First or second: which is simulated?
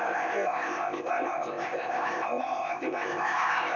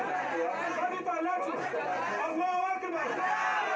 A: first